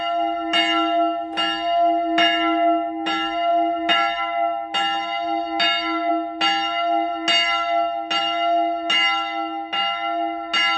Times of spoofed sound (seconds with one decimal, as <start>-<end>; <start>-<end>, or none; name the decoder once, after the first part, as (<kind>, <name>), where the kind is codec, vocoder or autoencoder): none